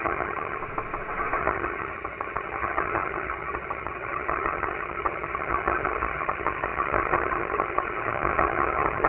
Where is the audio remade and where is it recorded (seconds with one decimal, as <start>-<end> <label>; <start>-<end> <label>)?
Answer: 0.0-0.6 remade; 0.6-1.4 recorded; 1.4-9.1 remade